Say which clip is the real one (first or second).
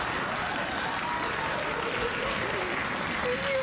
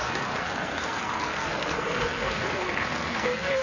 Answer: first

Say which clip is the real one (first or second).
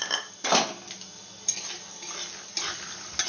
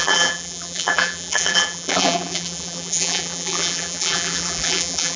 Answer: first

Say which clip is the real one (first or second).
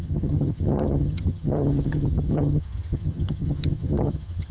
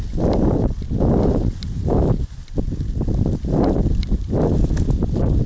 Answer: second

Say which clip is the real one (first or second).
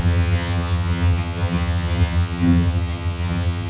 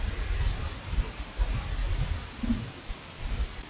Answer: second